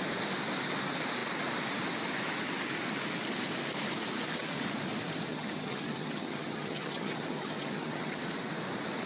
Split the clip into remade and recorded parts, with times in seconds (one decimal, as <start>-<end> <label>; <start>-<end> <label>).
0.0-5.3 recorded; 5.3-8.2 remade; 8.2-9.1 recorded